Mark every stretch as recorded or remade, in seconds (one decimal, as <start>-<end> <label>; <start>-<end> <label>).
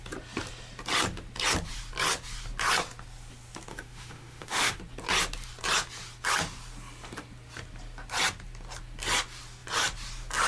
0.0-3.7 recorded; 3.7-4.8 remade; 4.8-10.5 recorded